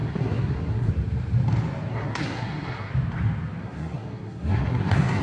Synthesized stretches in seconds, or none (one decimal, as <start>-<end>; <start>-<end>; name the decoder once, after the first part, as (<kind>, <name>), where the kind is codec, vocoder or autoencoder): 0.0-0.9 (codec, SNAC); 1.9-2.9; 3.6-5.2